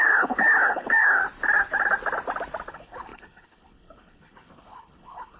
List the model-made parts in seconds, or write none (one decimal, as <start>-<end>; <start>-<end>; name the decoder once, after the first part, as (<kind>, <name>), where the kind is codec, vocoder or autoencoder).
0.0-1.2 (codec, HILCodec); 2.7-5.4